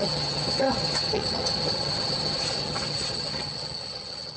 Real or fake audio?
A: fake